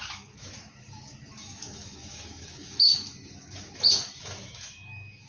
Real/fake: fake